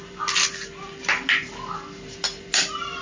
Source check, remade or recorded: recorded